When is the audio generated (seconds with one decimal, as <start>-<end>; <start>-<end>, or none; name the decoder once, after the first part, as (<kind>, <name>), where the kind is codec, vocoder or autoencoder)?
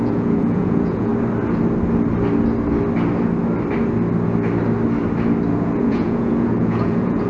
0.0-1.1 (vocoder, Vocos); 5.5-7.3